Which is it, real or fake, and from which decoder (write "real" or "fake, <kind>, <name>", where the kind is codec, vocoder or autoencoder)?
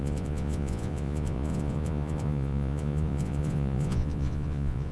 fake, vocoder, Vocos